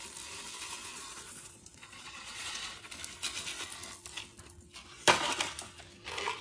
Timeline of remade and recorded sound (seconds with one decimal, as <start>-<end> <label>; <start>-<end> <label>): 0.0-0.9 recorded; 0.9-2.9 remade; 2.9-6.4 recorded